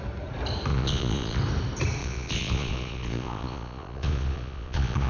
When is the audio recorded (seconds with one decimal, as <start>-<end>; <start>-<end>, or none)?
0.0-0.7; 1.4-2.0